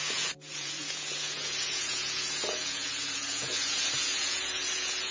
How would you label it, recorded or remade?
remade